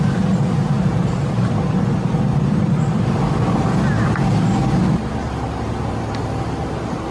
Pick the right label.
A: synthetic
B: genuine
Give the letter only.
B